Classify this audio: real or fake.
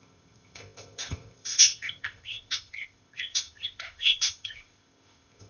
fake